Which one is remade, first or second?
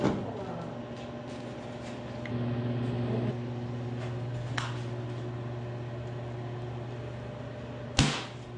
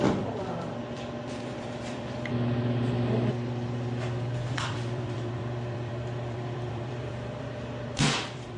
second